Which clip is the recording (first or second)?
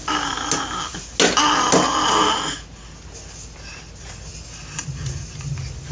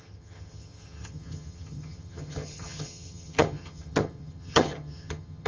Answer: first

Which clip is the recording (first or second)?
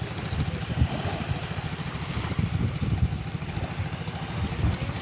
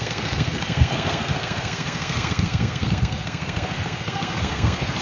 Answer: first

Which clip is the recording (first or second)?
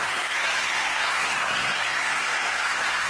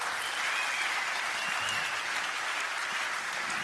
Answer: second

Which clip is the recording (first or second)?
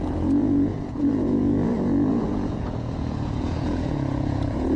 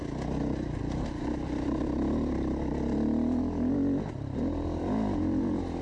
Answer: second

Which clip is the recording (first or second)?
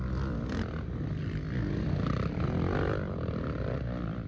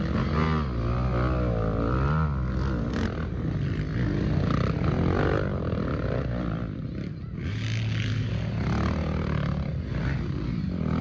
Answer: second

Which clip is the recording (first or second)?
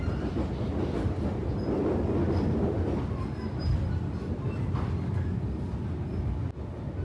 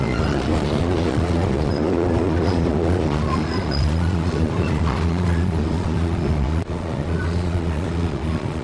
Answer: first